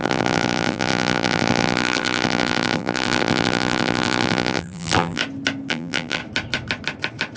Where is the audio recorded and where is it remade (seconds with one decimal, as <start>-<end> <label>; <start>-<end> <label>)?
0.0-5.2 remade; 5.2-5.7 recorded; 5.7-6.2 remade; 6.2-7.4 recorded